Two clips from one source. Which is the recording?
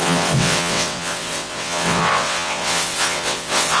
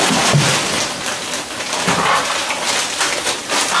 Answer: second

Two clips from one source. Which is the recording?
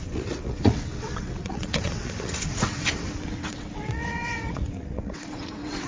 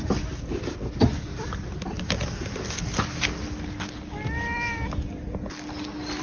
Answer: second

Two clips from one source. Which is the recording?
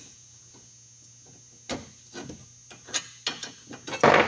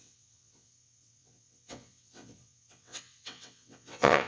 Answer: first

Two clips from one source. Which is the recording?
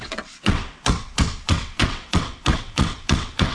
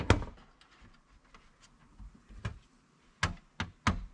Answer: second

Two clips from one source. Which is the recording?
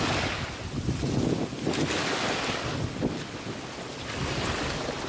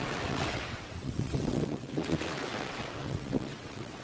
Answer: first